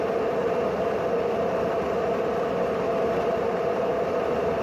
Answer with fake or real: real